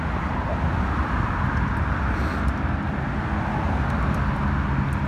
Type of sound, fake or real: real